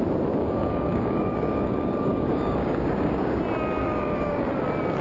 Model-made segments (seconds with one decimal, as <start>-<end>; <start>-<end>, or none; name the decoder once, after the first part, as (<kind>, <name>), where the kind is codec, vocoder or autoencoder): 0.4-3.4 (codec, DAC); 3.8-4.4